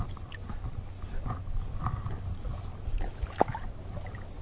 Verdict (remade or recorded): recorded